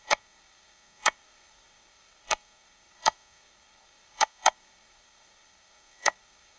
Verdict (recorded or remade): remade